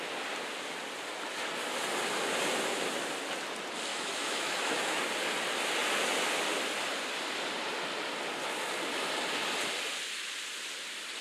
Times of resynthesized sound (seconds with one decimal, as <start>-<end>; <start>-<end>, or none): 3.9-5.0